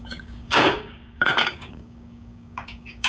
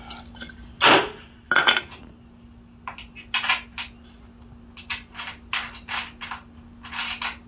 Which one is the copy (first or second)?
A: first